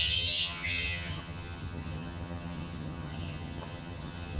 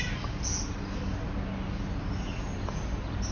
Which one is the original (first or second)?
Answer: second